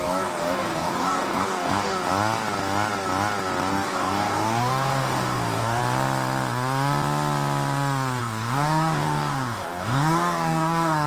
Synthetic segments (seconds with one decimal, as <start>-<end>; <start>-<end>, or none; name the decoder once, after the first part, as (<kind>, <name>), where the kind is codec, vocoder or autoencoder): 0.0-2.1 (codec, DAC); 3.7-5.8; 8.2-11.1